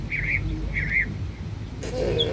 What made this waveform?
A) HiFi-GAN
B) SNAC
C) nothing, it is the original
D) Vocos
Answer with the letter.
C